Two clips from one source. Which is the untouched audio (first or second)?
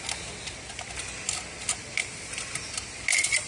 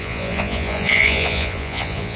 first